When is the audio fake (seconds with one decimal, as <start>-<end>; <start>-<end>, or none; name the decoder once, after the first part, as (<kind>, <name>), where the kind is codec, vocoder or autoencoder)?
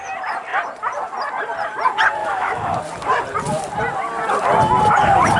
2.2-2.8 (autoencoder, DAC-VAE)